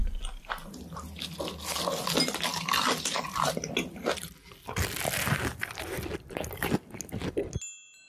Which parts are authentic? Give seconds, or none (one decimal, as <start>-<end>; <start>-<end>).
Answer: 0.0-8.1